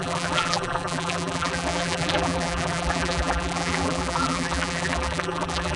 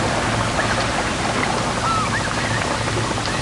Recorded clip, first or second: second